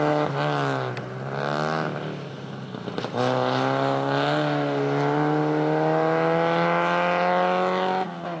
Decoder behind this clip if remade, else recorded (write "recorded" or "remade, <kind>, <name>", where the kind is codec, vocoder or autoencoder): recorded